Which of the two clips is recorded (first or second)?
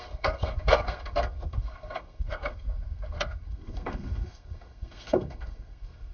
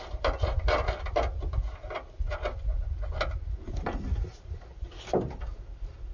second